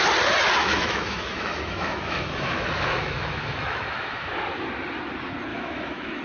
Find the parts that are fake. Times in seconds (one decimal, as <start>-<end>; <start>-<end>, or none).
0.6-4.3; 5.5-6.2